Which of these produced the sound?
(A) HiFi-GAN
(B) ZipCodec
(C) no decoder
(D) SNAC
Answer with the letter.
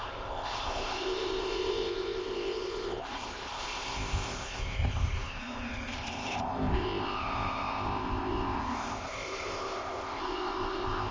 B